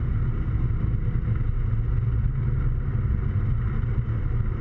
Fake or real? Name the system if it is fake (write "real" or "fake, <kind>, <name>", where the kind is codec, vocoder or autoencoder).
real